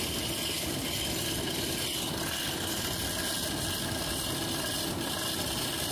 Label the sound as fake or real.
real